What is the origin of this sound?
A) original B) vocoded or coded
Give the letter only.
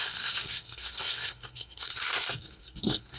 B